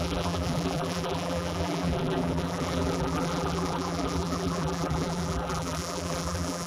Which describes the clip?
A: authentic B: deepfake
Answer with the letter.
B